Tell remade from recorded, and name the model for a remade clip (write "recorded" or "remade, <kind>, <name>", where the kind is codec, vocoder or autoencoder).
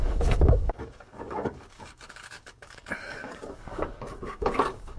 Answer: remade, codec, DAC